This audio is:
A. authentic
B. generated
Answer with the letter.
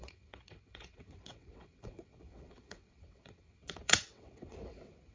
B